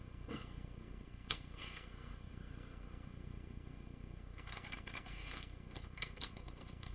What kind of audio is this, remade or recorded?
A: remade